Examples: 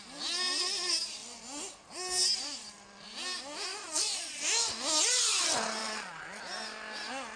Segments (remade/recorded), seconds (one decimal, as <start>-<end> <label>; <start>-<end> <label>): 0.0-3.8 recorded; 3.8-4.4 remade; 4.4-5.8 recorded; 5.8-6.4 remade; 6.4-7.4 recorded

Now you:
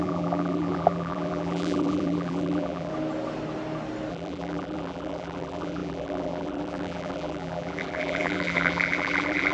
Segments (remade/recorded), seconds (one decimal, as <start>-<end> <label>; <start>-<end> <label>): 0.0-2.9 remade; 2.9-4.1 recorded; 4.1-9.5 remade

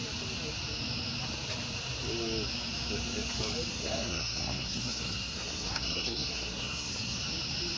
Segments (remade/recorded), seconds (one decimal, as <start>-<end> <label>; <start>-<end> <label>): 0.0-3.7 recorded; 3.7-7.2 remade; 7.2-7.8 recorded

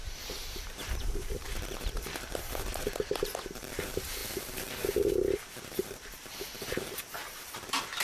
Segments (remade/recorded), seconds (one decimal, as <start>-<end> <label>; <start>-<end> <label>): 0.0-8.0 remade

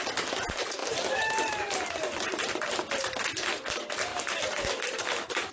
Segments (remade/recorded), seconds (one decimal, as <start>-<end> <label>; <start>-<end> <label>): 0.0-0.8 recorded; 0.8-1.9 remade; 1.9-4.1 recorded; 4.1-5.5 remade